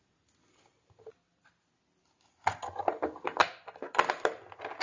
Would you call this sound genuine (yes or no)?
yes